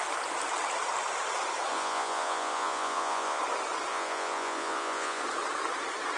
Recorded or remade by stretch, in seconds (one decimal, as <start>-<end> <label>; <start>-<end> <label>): 0.0-1.7 recorded; 1.7-3.4 remade; 3.4-3.9 recorded; 3.9-5.2 remade; 5.2-6.2 recorded